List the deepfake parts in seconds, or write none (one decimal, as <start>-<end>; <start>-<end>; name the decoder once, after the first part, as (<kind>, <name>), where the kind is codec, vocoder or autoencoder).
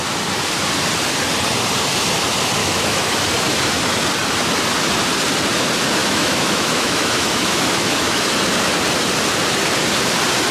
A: 2.6-3.1 (autoencoder, DAC-VAE); 6.0-8.2